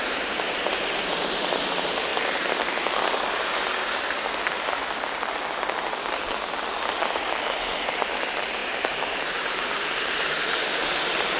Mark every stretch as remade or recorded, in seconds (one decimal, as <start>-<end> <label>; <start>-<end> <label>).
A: 0.0-2.1 remade; 2.1-7.0 recorded; 7.0-11.4 remade